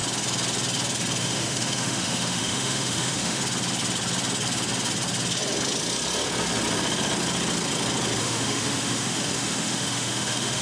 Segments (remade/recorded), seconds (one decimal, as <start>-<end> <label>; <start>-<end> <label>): 0.0-1.2 recorded; 1.2-3.4 remade; 3.4-8.2 recorded; 8.2-10.6 remade